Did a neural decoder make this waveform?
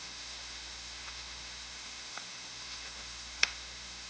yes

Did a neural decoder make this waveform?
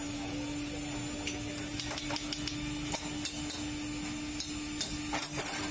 no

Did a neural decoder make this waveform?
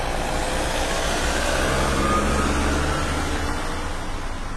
no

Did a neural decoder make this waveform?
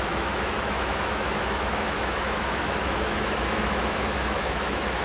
yes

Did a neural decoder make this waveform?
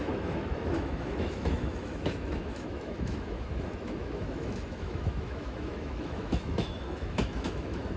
yes